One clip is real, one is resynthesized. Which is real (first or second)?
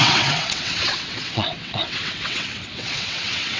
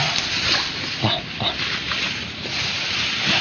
second